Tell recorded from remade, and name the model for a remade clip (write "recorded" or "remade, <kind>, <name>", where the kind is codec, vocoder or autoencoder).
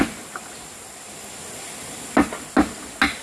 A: recorded